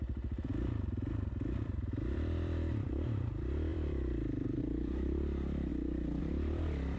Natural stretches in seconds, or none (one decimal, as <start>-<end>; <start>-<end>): 0.5-1.6; 5.7-6.2